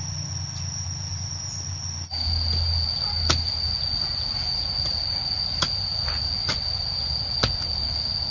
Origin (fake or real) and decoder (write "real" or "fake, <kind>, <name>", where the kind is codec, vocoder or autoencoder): real